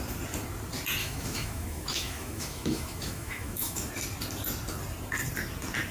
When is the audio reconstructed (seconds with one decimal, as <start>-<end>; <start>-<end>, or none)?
1.0-3.9